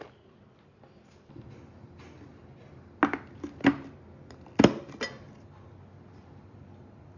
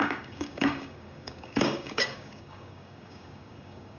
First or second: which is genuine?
first